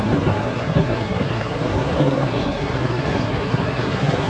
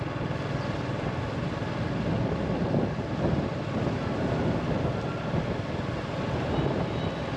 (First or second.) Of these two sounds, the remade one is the first